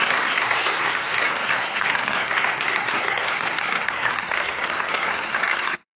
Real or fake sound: fake